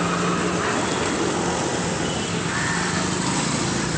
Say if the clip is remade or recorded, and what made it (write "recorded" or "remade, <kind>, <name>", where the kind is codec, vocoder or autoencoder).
recorded